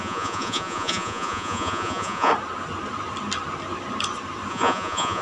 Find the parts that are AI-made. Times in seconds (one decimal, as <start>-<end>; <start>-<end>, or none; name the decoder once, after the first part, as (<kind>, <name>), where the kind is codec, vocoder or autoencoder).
0.0-2.3 (vocoder, Vocos); 4.5-5.2

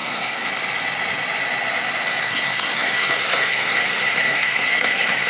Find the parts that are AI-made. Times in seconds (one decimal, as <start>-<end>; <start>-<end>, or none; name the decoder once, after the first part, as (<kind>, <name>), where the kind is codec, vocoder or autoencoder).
0.0-0.5 (codec, SNAC); 2.2-5.3

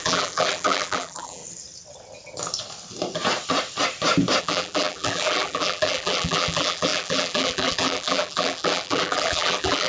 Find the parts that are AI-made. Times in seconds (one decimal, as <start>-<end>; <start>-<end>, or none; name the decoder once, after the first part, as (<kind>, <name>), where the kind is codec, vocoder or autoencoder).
0.0-1.4 (vocoder, BigVGAN v2); 4.4-9.9

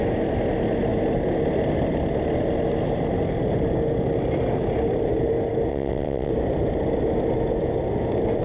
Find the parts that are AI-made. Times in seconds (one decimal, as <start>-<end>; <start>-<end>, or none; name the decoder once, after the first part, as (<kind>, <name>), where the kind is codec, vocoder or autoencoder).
5.7-6.3 (vocoder, WaveNeXt)

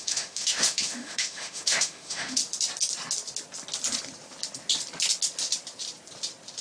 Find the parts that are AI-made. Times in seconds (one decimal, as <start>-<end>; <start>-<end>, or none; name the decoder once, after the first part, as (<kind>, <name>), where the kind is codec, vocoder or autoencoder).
0.0-2.4 (autoencoder, DAC-VAE)

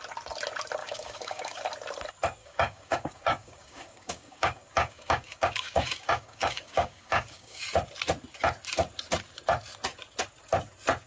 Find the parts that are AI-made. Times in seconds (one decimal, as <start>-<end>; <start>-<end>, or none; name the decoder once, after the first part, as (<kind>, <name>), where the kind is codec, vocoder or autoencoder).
0.8-1.6 (codec, DAC); 2.4-7.6

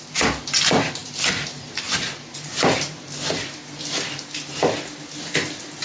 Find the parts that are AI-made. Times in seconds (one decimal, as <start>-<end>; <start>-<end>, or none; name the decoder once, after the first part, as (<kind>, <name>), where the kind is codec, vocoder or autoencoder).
1.0-4.5 (vocoder, BigVGAN v2)

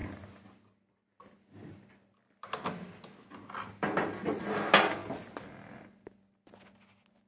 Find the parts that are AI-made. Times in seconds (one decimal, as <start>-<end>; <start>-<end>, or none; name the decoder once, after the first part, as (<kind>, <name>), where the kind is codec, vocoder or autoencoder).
none